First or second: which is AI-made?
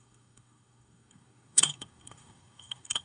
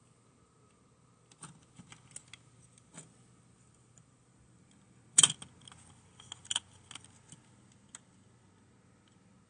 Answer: first